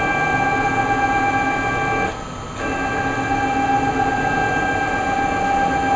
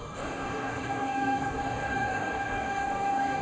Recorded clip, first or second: first